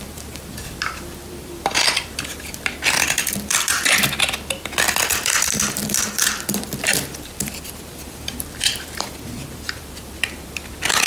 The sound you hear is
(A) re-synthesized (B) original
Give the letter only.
A